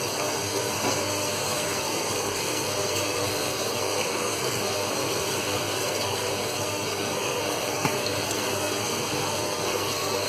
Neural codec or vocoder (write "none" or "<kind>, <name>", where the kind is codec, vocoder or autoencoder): codec, SNAC